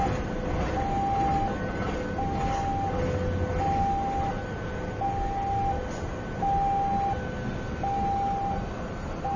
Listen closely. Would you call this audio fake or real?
real